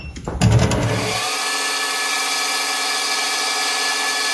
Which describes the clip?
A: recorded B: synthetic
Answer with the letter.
A